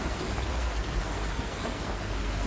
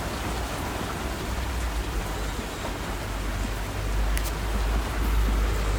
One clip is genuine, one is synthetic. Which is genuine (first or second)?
second